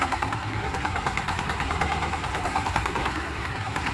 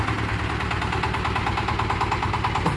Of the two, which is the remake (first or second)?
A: first